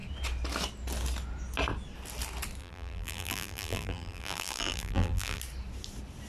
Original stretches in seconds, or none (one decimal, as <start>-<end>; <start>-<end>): 0.0-2.6; 5.4-6.3